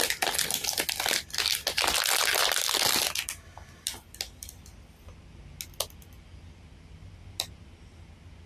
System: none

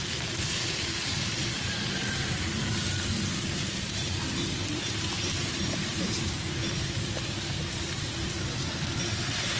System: vocoder, BigVGAN v2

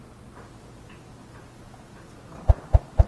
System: none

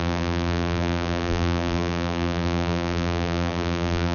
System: vocoder, BigVGAN v2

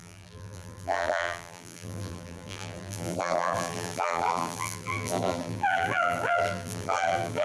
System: vocoder, BigVGAN v2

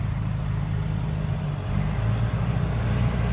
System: none